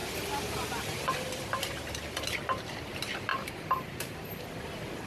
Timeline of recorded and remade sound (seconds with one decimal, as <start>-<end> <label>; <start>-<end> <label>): 0.0-3.3 recorded; 3.3-4.5 remade; 4.5-5.1 recorded